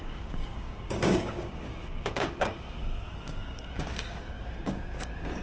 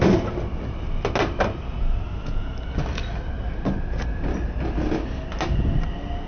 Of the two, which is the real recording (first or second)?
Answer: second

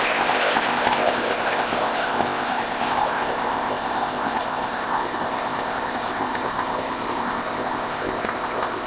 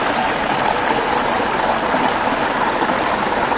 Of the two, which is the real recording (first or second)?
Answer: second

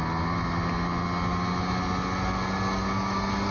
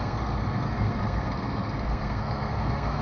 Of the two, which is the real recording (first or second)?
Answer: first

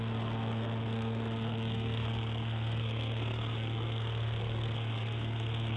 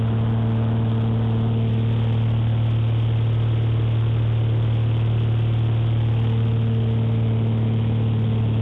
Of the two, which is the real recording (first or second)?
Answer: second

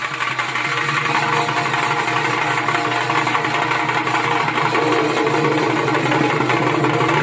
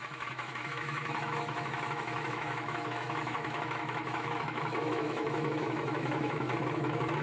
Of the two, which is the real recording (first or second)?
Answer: first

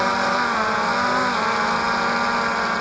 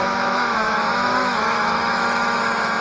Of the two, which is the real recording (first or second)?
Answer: first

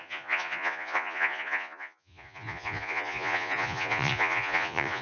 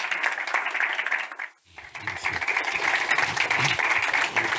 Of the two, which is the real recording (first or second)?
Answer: second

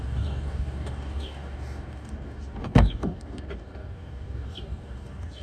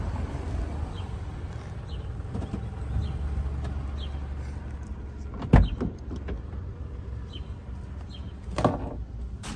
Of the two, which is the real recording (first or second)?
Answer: second